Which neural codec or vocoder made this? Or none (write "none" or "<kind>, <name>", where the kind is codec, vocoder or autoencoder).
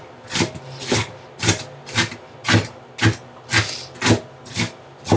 none